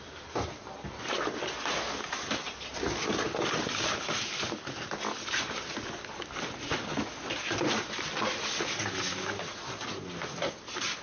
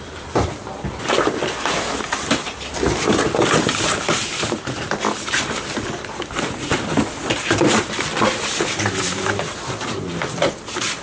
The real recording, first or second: first